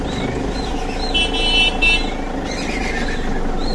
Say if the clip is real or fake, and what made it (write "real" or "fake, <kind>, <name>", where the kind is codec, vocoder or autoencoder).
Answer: real